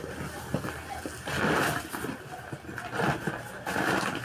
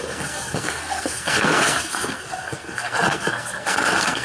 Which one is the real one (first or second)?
first